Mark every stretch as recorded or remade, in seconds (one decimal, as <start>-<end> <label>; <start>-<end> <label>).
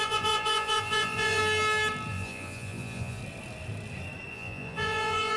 0.0-1.4 remade; 1.4-2.1 recorded; 2.1-3.2 remade; 3.2-4.3 recorded; 4.3-5.4 remade